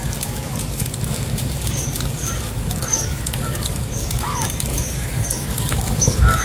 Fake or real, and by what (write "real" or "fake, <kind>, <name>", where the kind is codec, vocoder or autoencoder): fake, codec, DAC